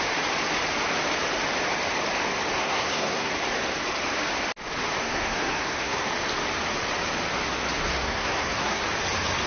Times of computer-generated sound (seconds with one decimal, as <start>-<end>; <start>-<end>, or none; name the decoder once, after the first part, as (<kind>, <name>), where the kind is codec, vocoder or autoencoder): 2.6-3.3 (codec, SNAC); 5.0-6.1; 7.9-8.8